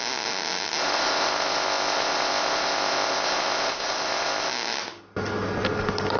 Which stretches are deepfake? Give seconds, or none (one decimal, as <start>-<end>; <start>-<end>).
0.8-4.5